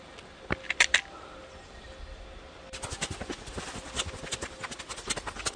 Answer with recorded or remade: recorded